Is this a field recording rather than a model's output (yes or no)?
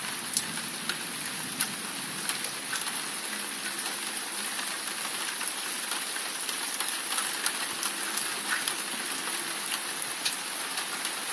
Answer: yes